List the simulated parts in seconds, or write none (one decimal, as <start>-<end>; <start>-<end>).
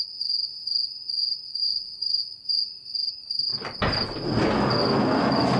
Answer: 1.6-2.2